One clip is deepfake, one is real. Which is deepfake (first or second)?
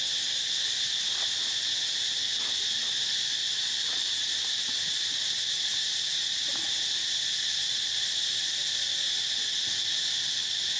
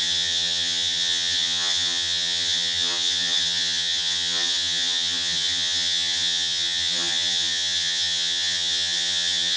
second